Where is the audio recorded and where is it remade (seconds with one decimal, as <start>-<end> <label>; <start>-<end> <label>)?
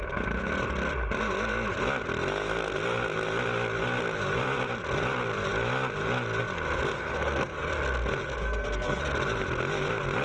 0.0-6.9 recorded; 6.9-7.7 remade; 7.7-8.4 recorded; 8.4-9.0 remade; 9.0-10.2 recorded